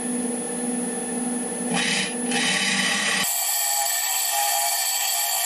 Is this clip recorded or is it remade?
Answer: recorded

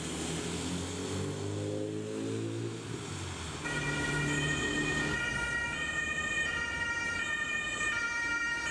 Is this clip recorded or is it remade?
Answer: recorded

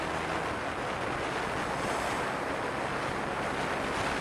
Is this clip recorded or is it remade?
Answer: recorded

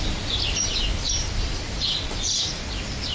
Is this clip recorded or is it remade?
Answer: remade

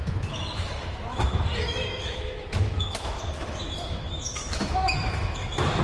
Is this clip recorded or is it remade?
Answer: remade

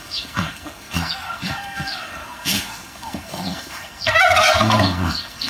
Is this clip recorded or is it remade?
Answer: remade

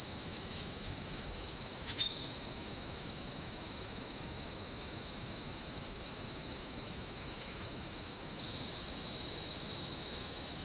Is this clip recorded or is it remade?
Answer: remade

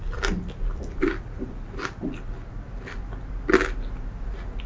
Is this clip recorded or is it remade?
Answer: recorded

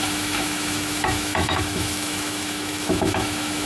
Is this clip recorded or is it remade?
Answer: remade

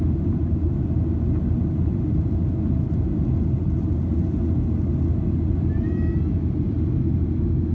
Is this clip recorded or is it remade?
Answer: recorded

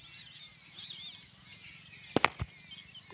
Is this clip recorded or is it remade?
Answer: recorded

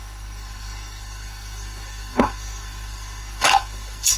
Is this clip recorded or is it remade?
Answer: remade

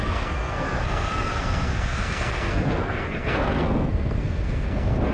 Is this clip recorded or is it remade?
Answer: remade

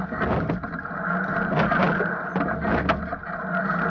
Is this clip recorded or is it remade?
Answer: recorded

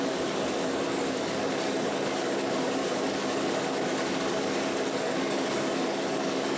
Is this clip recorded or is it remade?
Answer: remade